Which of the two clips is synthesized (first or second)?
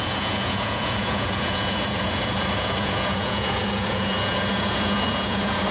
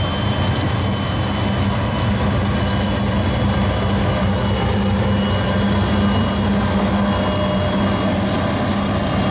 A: first